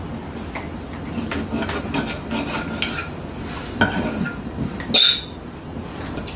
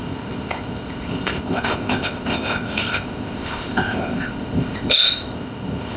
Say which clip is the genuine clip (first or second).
first